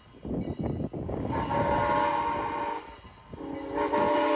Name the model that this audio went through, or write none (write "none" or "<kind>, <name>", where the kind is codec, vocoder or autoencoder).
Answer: none